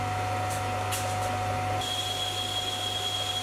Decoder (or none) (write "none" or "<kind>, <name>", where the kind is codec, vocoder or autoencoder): none